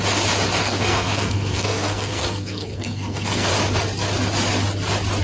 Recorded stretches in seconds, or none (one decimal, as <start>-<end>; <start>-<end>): 0.0-0.6; 3.5-5.2